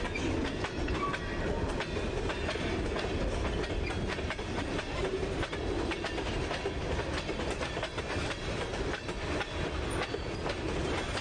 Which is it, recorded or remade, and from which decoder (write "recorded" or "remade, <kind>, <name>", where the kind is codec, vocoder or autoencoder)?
recorded